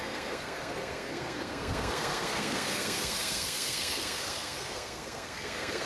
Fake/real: fake